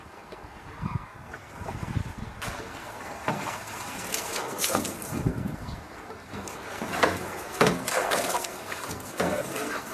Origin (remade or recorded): remade